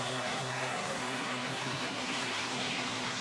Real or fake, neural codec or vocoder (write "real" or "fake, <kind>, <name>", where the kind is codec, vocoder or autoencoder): fake, codec, SNAC